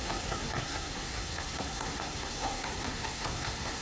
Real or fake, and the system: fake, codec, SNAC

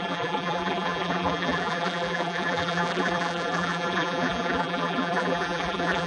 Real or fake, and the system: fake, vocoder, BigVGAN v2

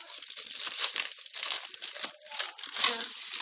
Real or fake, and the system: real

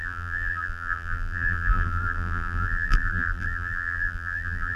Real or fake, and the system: fake, vocoder, BigVGAN v2